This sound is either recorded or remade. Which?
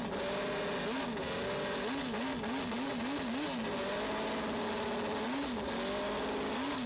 recorded